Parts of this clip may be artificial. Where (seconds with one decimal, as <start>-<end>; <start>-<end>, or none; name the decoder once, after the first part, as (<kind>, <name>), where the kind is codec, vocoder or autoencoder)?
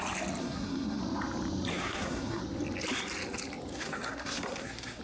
0.4-1.0 (codec, SNAC); 1.7-2.4; 3.7-5.0